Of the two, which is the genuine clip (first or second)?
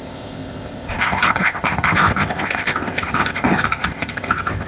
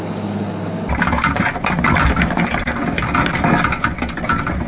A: second